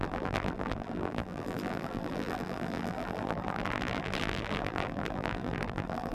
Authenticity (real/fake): fake